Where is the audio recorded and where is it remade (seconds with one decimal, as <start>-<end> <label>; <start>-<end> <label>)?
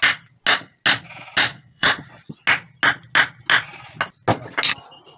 0.0-1.5 recorded; 1.5-2.2 remade; 2.2-5.2 recorded